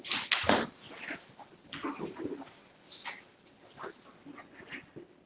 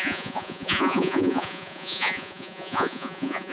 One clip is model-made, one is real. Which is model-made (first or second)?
second